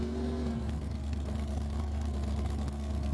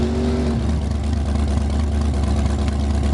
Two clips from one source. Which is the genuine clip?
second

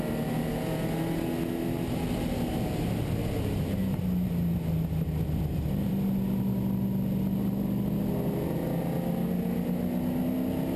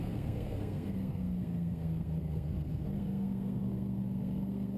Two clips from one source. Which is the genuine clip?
first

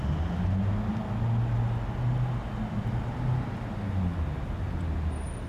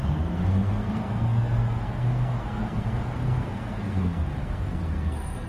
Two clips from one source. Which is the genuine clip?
first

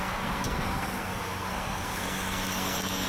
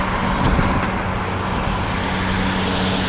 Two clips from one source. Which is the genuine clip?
second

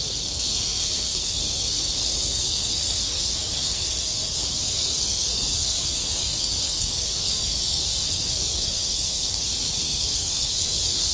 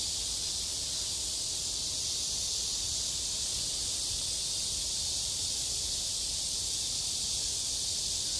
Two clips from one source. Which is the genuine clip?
second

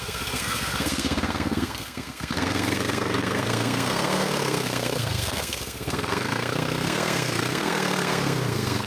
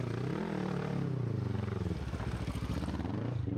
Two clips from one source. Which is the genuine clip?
second